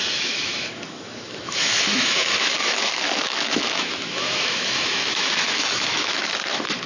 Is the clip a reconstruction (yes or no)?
yes